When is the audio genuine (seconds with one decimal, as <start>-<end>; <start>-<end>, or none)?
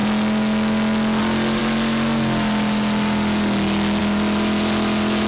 0.0-1.2; 1.6-4.0